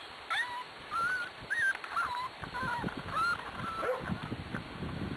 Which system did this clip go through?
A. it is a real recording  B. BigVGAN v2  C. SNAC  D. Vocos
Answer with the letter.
A